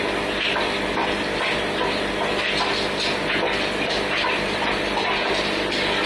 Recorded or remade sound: remade